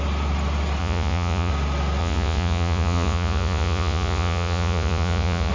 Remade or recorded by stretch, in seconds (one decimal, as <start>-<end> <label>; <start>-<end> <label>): 0.0-0.8 recorded; 0.8-1.5 remade; 1.5-2.0 recorded; 2.0-5.5 remade